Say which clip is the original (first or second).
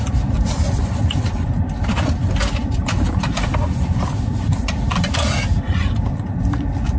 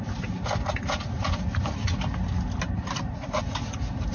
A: second